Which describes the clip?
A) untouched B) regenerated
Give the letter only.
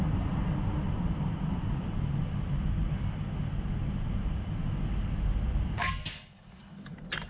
A